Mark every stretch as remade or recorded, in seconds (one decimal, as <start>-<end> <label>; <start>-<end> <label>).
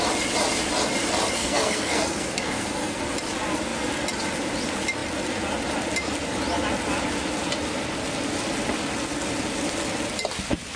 0.0-1.4 recorded; 1.4-3.0 remade; 3.0-10.8 recorded